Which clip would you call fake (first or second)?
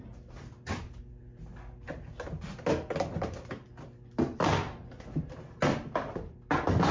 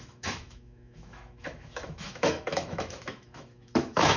second